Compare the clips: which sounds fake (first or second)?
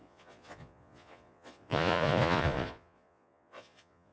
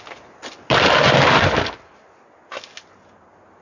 first